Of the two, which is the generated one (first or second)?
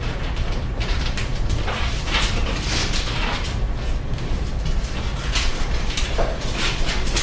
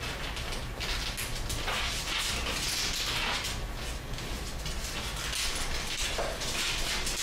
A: first